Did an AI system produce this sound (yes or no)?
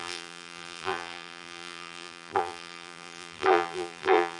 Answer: yes